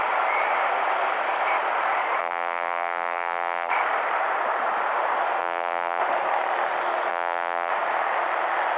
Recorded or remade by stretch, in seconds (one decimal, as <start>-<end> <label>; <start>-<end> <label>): 0.0-2.2 recorded; 2.2-3.7 remade; 3.7-5.4 recorded; 5.4-6.0 remade; 6.0-7.1 recorded; 7.1-7.7 remade; 7.7-8.8 recorded